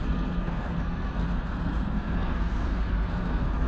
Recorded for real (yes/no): no